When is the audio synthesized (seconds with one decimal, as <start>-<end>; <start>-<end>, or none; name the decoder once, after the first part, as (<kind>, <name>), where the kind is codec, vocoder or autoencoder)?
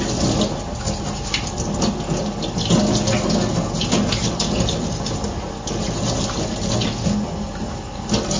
none